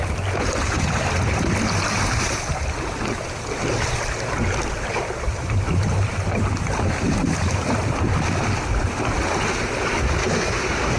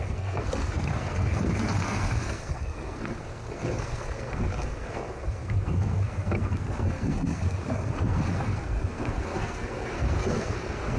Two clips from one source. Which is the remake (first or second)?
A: second